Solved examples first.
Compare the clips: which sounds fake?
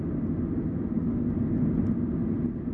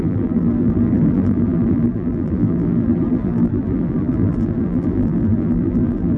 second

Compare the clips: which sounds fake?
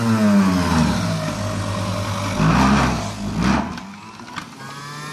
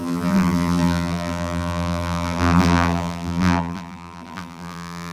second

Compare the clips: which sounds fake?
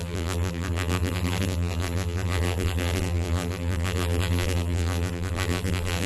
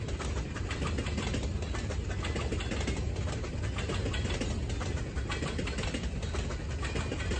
first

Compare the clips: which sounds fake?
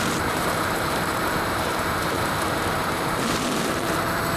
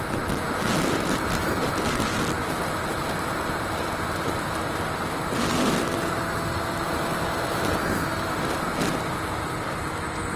first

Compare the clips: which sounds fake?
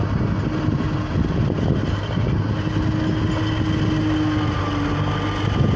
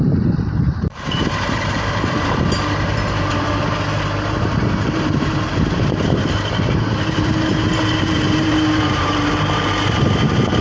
second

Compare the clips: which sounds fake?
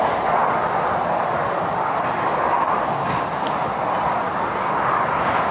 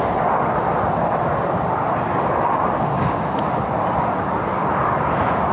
second